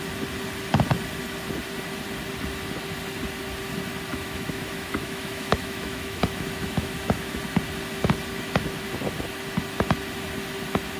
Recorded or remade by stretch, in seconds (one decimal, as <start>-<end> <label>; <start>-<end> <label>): 0.0-4.1 recorded; 4.1-7.4 remade; 7.4-11.0 recorded